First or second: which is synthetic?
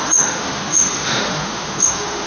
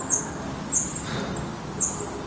first